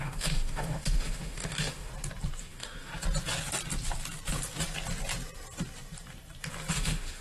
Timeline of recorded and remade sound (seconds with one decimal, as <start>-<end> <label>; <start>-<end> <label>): 0.0-1.9 remade; 1.9-2.4 recorded; 2.4-2.9 remade; 2.9-6.7 recorded; 6.7-7.2 remade